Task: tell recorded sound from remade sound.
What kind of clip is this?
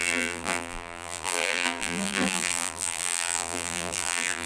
remade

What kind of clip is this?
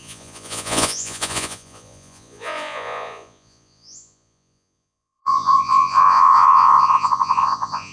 remade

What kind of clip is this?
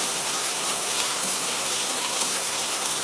remade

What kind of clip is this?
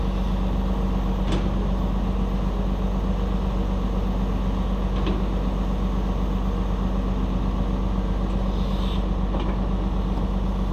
recorded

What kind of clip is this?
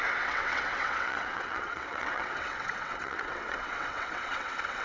remade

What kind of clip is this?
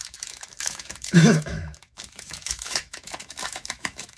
remade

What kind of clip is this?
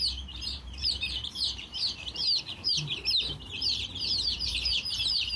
remade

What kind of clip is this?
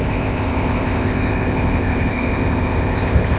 remade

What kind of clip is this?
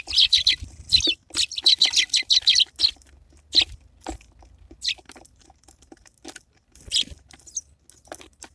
recorded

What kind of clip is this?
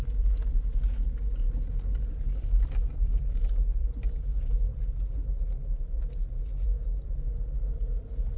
recorded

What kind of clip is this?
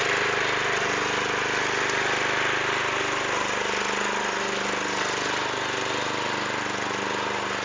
recorded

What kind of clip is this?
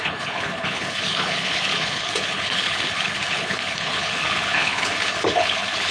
remade